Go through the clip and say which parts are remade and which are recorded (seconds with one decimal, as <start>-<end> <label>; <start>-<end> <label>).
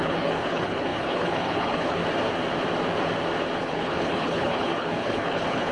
0.0-2.0 remade; 2.0-3.6 recorded; 3.6-5.7 remade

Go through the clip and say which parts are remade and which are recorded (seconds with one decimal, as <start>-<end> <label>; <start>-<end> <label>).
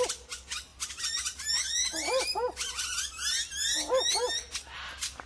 0.0-5.3 recorded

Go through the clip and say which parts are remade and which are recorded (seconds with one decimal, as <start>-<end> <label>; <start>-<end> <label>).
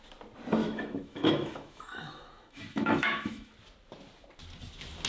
0.0-0.6 recorded; 0.6-3.5 remade; 3.5-5.1 recorded